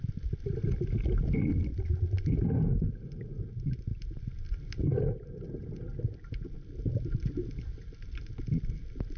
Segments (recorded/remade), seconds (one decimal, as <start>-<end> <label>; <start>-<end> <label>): 0.0-9.2 recorded